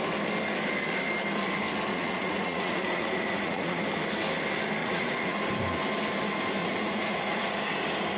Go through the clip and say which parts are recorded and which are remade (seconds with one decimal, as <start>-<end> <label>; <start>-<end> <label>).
0.0-1.9 recorded; 1.9-3.8 remade; 3.8-4.8 recorded; 4.8-5.4 remade; 5.4-6.6 recorded; 6.6-7.6 remade; 7.6-8.2 recorded